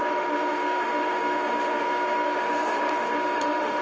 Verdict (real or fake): fake